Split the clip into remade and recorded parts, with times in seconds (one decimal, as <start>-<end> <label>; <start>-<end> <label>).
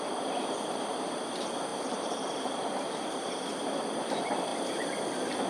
0.0-1.7 remade; 1.7-4.0 recorded; 4.0-5.5 remade